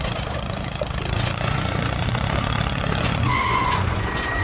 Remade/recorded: remade